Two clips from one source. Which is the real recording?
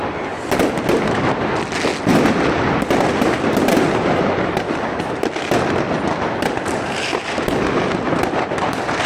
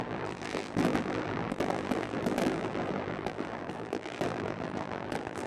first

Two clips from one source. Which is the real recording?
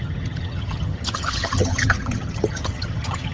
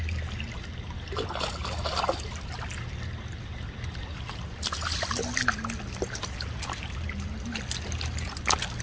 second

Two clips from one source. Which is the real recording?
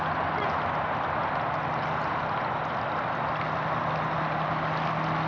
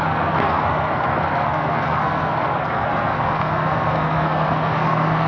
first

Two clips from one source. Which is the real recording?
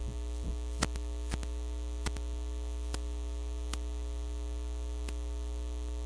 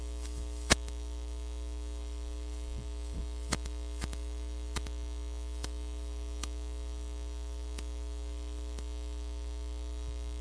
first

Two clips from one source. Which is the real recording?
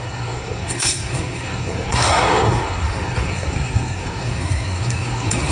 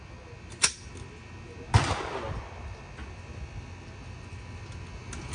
second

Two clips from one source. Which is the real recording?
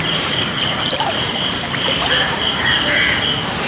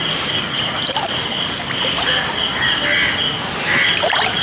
second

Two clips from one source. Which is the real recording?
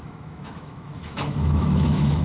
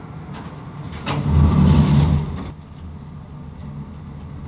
second